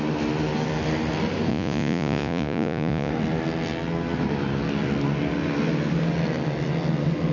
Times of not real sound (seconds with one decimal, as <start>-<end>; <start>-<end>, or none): 1.5-3.1